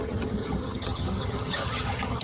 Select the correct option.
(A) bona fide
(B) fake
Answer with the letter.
B